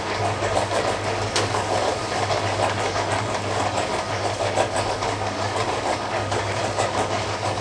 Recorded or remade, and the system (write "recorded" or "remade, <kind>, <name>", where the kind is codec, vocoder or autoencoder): remade, codec, DAC